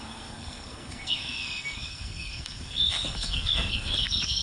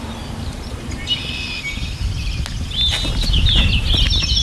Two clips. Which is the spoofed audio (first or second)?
first